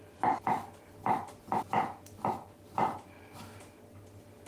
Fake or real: real